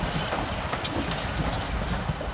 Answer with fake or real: real